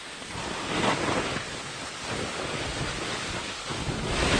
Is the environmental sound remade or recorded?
recorded